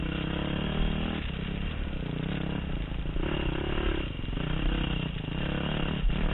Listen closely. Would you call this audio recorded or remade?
recorded